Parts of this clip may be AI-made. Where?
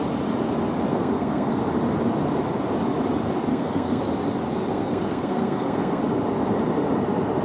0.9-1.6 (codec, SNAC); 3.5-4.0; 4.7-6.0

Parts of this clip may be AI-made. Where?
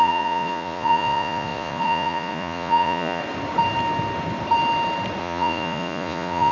0.0-3.2 (vocoder, Vocos); 5.2-6.5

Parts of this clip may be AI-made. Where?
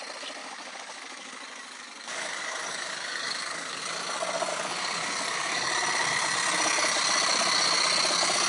0.4-3.8 (codec, DAC); 4.5-5.7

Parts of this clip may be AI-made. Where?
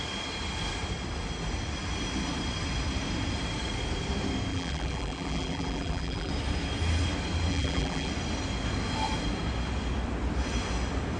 4.5-6.3 (vocoder, BigVGAN v2); 7.5-8.1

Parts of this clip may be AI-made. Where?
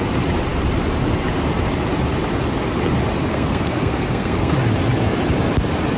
3.3-4.5 (codec, SNAC)